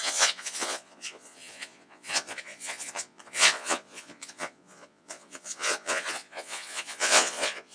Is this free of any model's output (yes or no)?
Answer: no